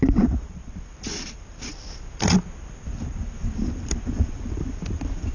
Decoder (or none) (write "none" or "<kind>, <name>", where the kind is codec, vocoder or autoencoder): none